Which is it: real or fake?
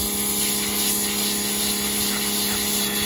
real